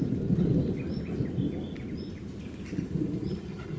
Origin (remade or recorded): recorded